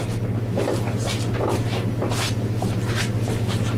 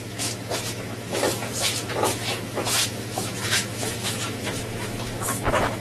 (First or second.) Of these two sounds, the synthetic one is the second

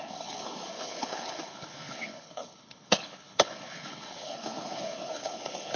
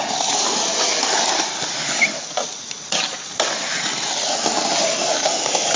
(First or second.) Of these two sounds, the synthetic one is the first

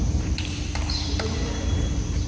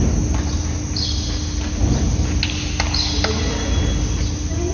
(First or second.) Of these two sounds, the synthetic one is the first